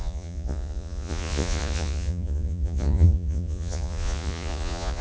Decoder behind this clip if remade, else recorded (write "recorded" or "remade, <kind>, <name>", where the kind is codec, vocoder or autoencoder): remade, vocoder, Vocos